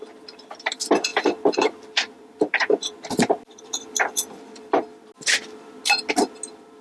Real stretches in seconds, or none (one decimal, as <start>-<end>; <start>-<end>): 0.0-1.1; 4.2-6.8